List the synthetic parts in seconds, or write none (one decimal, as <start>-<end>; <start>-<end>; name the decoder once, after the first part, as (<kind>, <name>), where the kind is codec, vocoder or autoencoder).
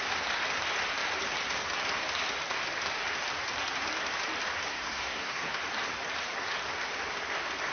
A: 4.7-5.6 (codec, SNAC)